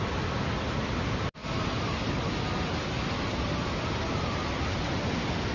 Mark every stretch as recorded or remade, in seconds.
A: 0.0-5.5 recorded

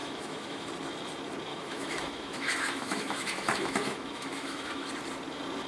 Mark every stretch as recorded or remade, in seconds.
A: 0.0-0.7 remade; 0.7-1.5 recorded; 1.5-4.9 remade; 4.9-5.7 recorded

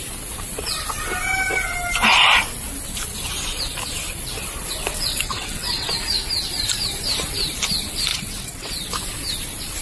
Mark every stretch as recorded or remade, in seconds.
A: 0.0-4.9 recorded; 4.9-5.9 remade; 5.9-8.1 recorded; 8.1-8.9 remade; 8.9-9.8 recorded

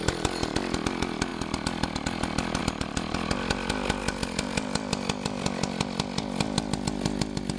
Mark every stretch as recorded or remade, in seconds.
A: 0.0-7.6 recorded

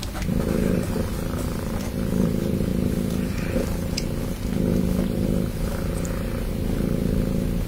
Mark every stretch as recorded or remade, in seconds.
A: 0.0-7.7 recorded